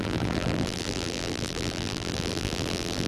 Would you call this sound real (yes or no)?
no